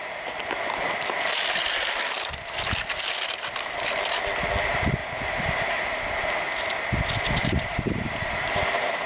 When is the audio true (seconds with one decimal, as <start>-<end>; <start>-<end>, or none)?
0.0-5.0; 5.7-7.4